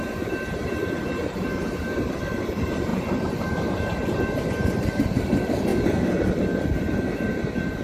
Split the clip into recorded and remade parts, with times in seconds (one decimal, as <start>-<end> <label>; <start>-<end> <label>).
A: 0.0-5.7 remade; 5.7-7.1 recorded; 7.1-7.8 remade